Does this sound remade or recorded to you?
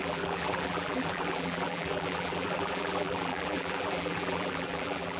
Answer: remade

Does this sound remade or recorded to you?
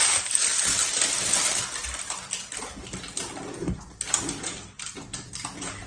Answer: recorded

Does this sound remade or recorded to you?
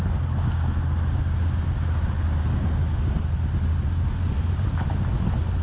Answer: recorded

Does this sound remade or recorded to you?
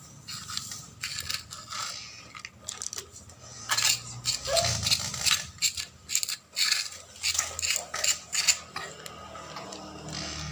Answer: recorded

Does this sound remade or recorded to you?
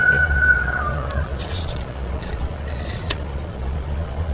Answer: remade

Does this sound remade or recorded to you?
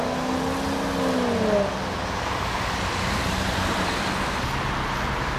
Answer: recorded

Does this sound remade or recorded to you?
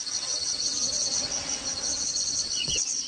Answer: remade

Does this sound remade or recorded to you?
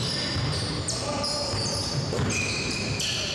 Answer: recorded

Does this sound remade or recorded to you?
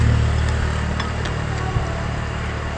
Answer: recorded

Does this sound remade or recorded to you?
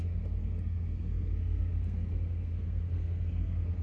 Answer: remade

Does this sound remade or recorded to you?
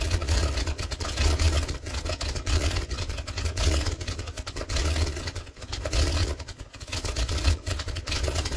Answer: remade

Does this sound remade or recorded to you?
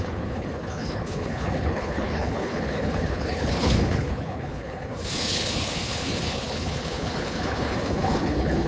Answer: remade